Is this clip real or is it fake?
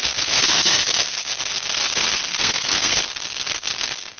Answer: fake